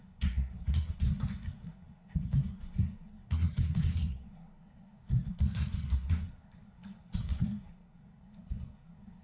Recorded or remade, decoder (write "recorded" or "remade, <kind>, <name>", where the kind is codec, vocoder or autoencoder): remade, codec, SNAC